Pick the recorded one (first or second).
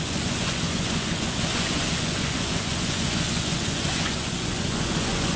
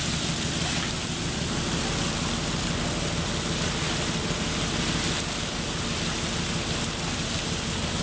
second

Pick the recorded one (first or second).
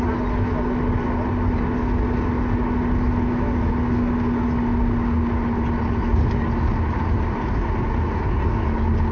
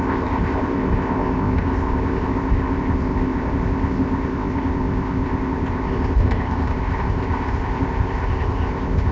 first